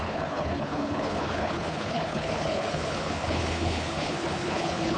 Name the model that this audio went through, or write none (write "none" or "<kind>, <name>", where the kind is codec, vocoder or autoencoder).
codec, HILCodec